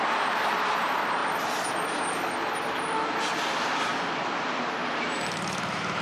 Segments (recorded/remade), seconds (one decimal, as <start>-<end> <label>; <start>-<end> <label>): 0.0-1.2 remade; 1.2-4.8 recorded; 4.8-6.0 remade